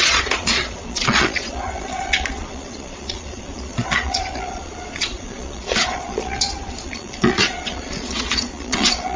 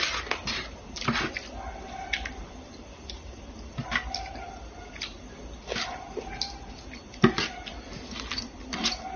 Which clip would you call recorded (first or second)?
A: second